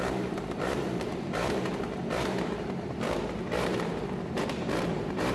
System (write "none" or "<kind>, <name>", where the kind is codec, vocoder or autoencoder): vocoder, BigVGAN v2